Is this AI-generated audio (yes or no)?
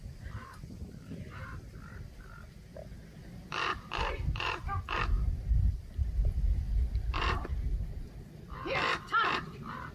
no